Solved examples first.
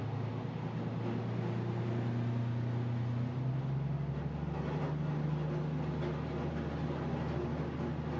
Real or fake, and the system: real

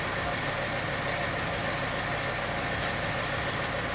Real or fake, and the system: real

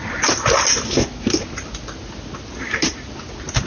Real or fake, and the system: real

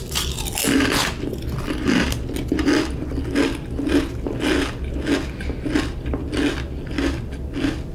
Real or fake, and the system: real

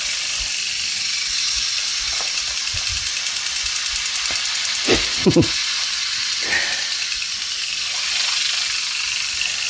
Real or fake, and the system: fake, vocoder, BigVGAN v2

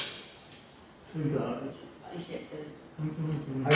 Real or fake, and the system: real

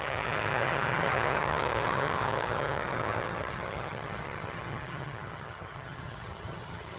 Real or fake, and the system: fake, vocoder, HiFi-GAN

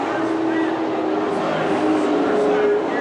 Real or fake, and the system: real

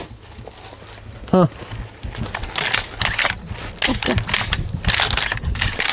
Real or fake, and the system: real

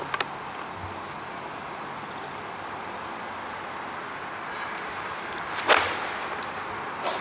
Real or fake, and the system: real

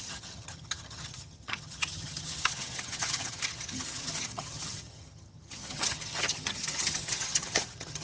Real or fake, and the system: fake, vocoder, HiFi-GAN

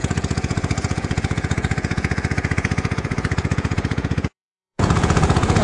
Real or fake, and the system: fake, vocoder, Vocos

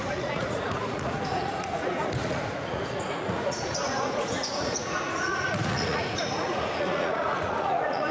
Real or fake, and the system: fake, vocoder, Vocos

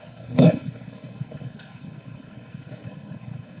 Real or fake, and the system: fake, codec, SNAC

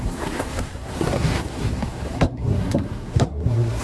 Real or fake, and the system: fake, codec, SNAC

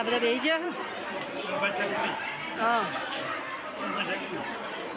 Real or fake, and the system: fake, vocoder, BigVGAN v2